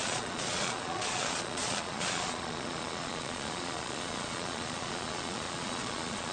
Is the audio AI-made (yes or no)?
yes